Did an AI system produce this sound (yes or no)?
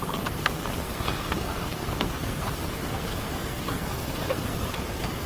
yes